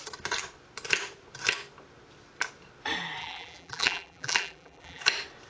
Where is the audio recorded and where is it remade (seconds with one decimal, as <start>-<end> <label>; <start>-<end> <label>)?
0.0-3.2 recorded; 3.2-5.0 remade; 5.0-5.5 recorded